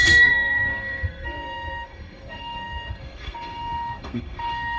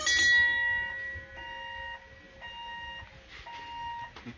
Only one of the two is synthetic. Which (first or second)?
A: first